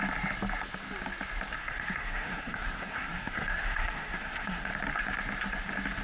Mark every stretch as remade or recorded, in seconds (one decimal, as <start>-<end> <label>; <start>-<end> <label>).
0.0-1.6 recorded; 1.6-4.7 remade; 4.7-6.0 recorded